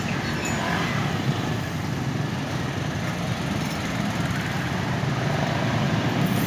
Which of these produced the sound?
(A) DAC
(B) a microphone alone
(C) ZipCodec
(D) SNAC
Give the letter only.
B